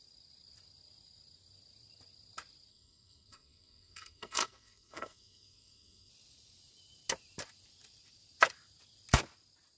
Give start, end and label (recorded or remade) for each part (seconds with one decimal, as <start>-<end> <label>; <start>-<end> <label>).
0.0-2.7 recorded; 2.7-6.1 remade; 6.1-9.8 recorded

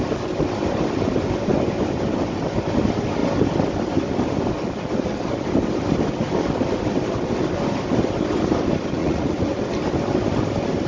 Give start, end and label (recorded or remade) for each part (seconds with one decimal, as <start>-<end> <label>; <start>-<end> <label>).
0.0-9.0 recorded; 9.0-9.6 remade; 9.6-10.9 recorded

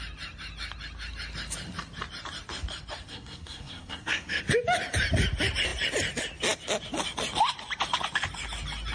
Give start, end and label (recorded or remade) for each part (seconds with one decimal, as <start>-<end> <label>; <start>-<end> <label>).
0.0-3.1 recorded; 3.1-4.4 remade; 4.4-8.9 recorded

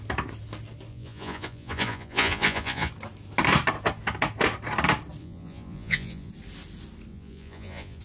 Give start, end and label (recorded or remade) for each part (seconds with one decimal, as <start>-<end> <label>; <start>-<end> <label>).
0.0-0.9 recorded; 0.9-2.9 remade; 2.9-5.2 recorded; 5.2-6.3 remade; 6.3-7.1 recorded; 7.1-8.0 remade

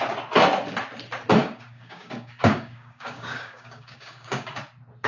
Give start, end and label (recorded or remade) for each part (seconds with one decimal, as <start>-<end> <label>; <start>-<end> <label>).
0.0-1.4 recorded; 1.4-4.5 remade; 4.5-5.1 recorded

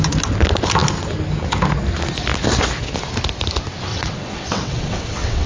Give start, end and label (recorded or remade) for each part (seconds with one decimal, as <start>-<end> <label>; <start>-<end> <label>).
0.0-3.9 recorded; 3.9-5.5 remade